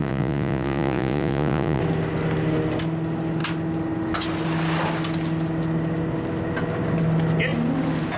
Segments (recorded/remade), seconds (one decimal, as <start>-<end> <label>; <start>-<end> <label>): 0.0-1.8 remade; 1.8-8.2 recorded